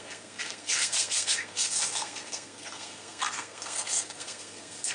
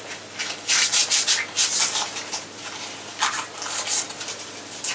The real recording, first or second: second